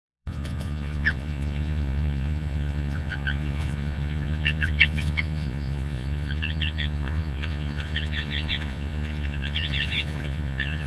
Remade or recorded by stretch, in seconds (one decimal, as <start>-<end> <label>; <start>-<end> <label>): 0.0-10.9 remade